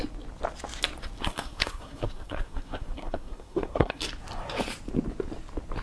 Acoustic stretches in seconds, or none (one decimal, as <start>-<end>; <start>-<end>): 0.0-1.2; 4.1-5.8